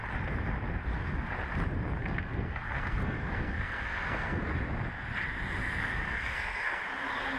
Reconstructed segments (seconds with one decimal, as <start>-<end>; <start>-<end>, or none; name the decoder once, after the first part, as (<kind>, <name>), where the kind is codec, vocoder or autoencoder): 2.0-4.5 (codec, SNAC); 5.6-6.8